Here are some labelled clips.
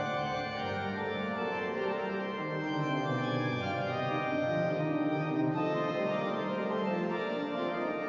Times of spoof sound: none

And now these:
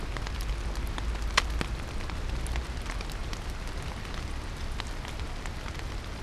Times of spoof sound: none

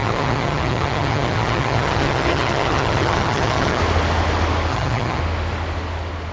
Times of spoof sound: 0.0-3.8 (vocoder, HiFi-GAN); 4.7-5.2

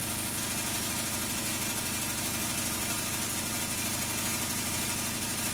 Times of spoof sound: none

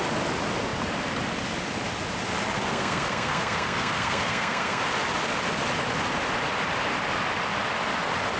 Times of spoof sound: 2.7-4.8 (codec, SNAC)